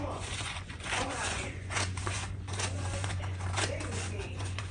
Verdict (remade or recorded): remade